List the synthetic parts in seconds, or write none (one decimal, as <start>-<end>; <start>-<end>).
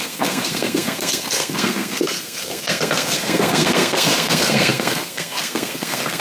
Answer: 0.0-6.2